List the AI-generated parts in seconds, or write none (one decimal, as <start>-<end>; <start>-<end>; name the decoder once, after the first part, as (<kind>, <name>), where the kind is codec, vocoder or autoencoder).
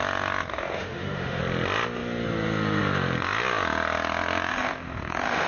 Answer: 0.5-1.4 (autoencoder, DAC-VAE); 4.5-5.5